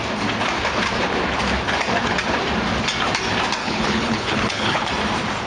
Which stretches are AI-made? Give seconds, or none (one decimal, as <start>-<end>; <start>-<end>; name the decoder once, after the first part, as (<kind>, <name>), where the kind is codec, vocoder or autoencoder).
3.6-4.9 (codec, HILCodec)